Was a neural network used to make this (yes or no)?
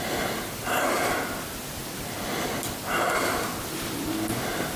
no